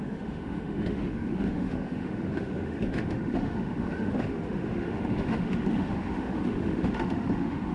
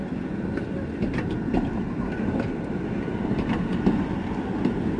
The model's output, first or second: first